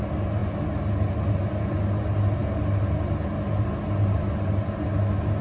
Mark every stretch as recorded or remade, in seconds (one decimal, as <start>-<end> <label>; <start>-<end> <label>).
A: 0.0-5.4 recorded